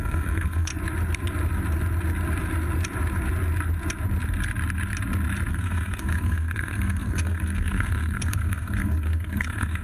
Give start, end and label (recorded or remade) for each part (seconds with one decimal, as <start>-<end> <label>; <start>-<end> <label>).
0.0-0.7 remade; 0.7-5.5 recorded; 5.5-9.8 remade